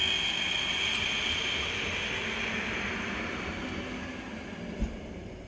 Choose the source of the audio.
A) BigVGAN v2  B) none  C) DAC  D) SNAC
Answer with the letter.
B